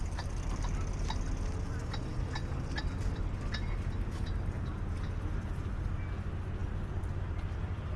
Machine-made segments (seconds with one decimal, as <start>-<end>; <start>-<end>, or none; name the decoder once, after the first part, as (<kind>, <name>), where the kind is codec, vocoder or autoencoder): none